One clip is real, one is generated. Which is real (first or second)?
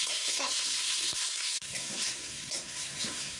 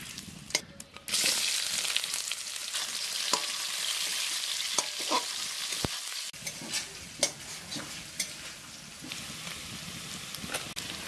second